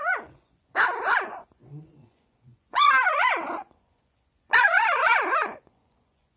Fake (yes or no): yes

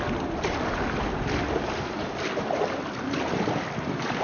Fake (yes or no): no